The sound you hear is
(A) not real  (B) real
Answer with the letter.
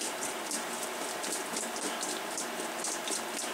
A